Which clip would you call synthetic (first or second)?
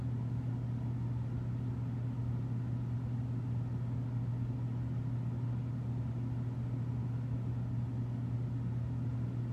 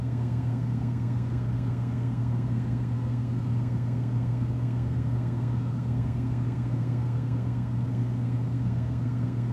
second